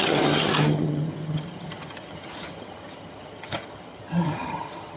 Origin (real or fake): fake